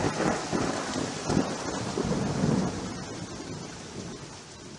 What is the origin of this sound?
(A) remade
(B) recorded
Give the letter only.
B